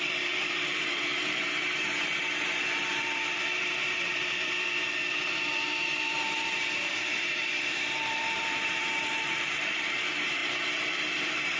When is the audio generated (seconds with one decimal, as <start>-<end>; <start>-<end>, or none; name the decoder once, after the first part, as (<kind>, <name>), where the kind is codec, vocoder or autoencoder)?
0.0-11.6 (vocoder, BigVGAN v2)